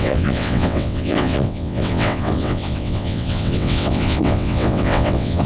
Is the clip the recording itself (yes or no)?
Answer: no